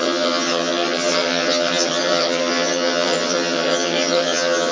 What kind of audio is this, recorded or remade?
remade